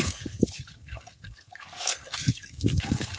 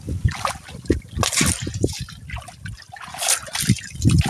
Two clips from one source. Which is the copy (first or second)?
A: first